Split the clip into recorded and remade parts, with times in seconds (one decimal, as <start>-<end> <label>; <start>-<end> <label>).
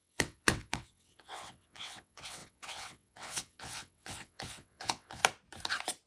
0.0-5.2 remade; 5.2-6.1 recorded